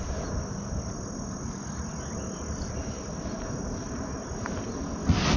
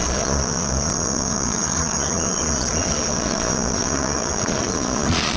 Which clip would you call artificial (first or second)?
second